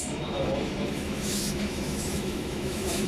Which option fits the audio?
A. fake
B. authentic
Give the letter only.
A